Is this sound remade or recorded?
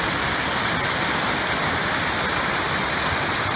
recorded